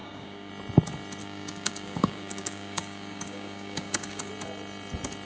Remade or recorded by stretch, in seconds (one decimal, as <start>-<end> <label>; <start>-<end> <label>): 0.0-0.5 remade; 0.5-1.2 recorded; 1.2-4.3 remade; 4.3-5.2 recorded

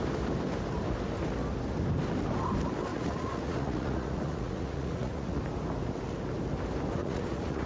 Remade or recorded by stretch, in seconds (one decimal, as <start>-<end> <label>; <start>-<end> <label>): 0.0-2.9 recorded; 2.9-5.4 remade; 5.4-7.0 recorded; 7.0-7.7 remade

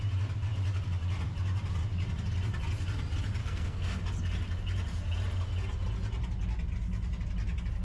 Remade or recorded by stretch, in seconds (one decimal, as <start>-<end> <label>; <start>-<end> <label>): 0.0-3.4 recorded; 3.4-4.0 remade; 4.0-7.8 recorded

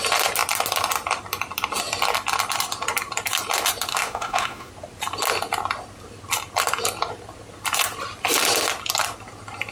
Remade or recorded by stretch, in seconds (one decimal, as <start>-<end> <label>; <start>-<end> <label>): 0.0-3.9 recorded; 3.9-4.7 remade; 4.7-9.7 recorded

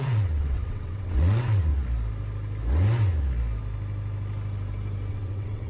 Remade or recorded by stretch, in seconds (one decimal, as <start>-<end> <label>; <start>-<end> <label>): 0.0-1.7 remade; 1.7-5.1 recorded; 5.1-5.7 remade